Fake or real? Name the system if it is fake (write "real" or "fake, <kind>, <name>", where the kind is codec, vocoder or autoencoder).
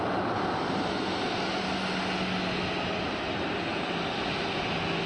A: real